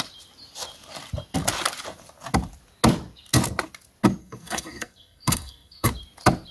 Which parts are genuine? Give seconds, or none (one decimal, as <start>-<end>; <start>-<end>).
0.0-4.2; 5.9-6.5

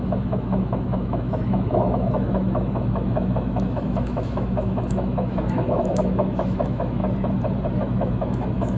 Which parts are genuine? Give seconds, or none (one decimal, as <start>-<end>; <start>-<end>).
7.0-7.8

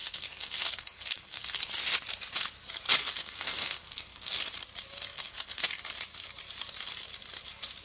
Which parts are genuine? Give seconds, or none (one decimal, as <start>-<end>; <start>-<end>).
1.6-3.0; 4.3-5.1; 5.8-7.8

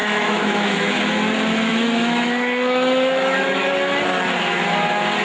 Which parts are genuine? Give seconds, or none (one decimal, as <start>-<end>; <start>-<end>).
0.9-1.7; 3.7-5.2

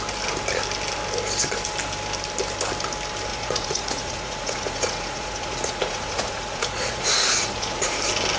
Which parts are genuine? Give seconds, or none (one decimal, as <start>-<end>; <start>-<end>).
0.0-3.3; 7.9-8.4

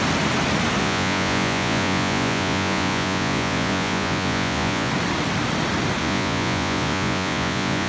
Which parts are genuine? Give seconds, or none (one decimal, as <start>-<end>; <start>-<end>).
0.0-0.8; 4.9-6.0